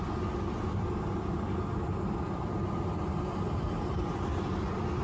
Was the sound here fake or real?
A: real